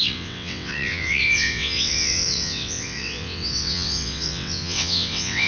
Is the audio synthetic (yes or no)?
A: yes